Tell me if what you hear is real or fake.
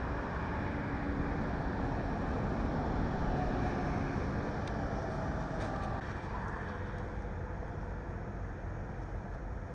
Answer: real